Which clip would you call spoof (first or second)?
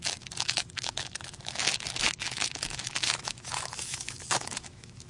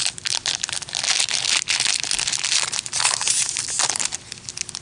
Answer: first